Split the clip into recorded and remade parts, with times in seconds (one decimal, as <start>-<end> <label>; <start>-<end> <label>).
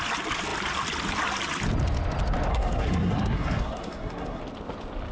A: 0.0-2.5 recorded; 2.5-4.4 remade; 4.4-5.1 recorded